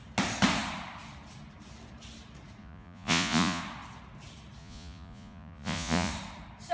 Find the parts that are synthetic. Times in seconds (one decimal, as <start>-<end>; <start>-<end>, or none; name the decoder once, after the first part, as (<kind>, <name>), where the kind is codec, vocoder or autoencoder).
2.6-3.6 (vocoder, Vocos); 4.6-6.1